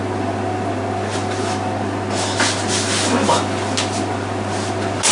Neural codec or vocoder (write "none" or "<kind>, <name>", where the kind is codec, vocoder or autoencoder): none